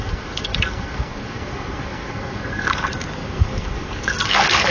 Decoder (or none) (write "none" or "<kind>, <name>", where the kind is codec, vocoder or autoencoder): codec, SNAC